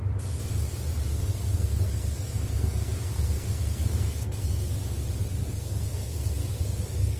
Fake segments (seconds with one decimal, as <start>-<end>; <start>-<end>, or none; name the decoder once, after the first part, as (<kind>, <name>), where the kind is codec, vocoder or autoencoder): 1.1-4.7 (codec, SNAC); 5.4-7.2